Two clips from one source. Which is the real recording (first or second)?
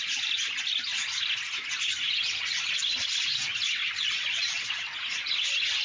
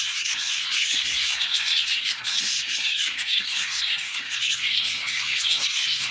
first